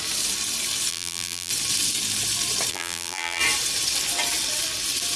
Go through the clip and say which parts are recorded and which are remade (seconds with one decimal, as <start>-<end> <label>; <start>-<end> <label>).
0.0-0.9 recorded; 0.9-1.5 remade; 1.5-2.7 recorded; 2.7-3.4 remade; 3.4-5.2 recorded